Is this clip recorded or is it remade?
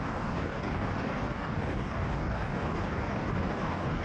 remade